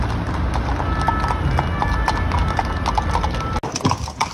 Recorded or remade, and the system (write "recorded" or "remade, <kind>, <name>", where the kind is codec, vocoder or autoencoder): recorded